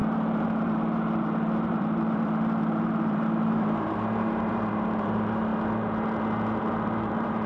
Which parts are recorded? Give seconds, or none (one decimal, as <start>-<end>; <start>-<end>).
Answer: 5.5-6.6